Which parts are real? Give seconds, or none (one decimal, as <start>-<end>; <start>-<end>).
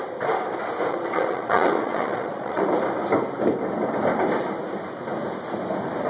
0.0-0.9; 2.6-6.1